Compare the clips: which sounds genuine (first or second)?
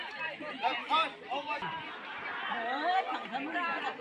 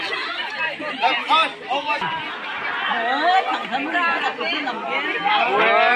second